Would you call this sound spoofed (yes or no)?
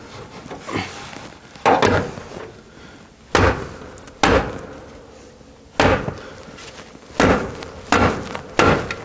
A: no